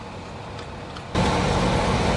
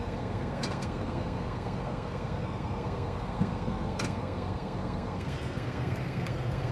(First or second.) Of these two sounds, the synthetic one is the second